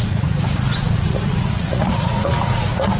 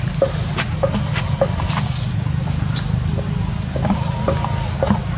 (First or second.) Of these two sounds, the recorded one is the second